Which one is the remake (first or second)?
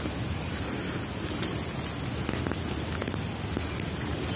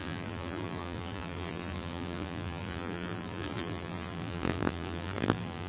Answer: second